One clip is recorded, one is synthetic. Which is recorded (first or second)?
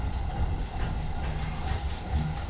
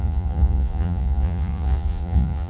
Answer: first